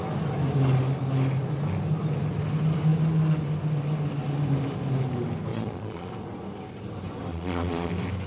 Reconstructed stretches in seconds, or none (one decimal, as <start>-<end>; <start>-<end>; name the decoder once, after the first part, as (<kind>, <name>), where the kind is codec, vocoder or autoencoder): 5.5-6.1 (vocoder, Vocos); 7.3-7.9